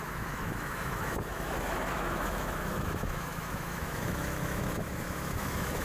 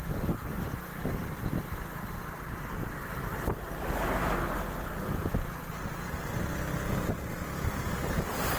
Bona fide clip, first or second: second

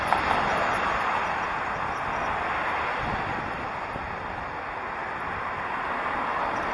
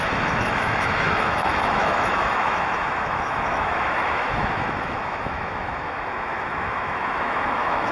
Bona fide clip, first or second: first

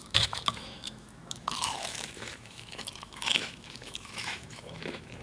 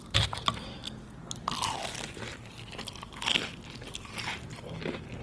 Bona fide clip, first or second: second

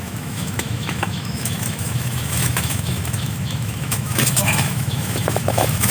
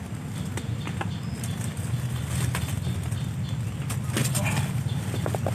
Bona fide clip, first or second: second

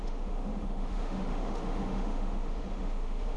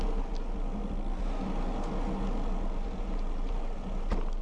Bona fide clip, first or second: second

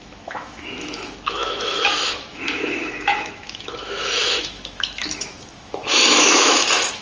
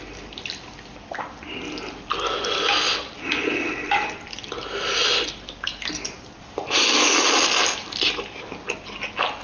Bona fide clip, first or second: second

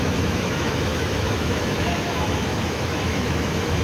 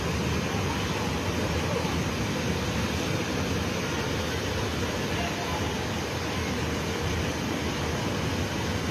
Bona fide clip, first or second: second